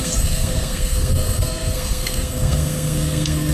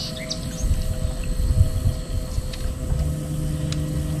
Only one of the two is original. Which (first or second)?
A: second